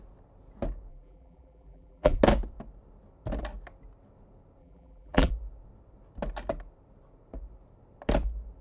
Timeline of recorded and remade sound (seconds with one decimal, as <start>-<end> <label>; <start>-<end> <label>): 0.0-0.9 recorded; 0.9-2.2 remade; 2.2-4.6 recorded; 4.6-5.3 remade; 5.3-8.6 recorded